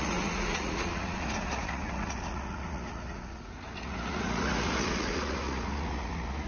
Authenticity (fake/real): fake